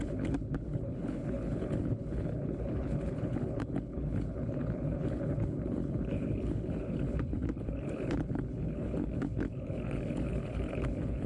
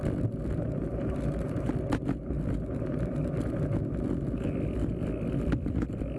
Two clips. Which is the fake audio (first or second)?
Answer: first